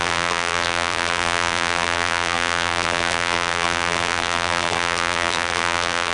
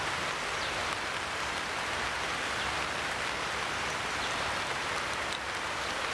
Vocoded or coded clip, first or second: first